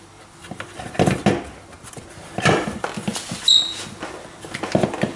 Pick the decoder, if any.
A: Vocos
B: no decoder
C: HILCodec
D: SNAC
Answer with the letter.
B